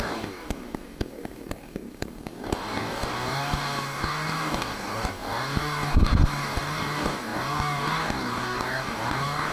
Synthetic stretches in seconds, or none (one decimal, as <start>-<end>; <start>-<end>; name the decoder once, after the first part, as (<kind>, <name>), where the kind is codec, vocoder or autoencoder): 0.0-9.5 (codec, DAC)